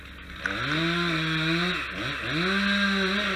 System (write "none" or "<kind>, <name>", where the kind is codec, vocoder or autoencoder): none